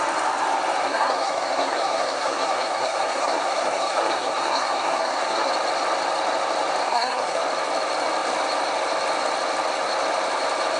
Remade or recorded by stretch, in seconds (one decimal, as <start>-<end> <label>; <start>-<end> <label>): 0.0-0.8 recorded; 0.8-5.5 remade; 5.5-6.8 recorded; 6.8-7.4 remade; 7.4-10.8 recorded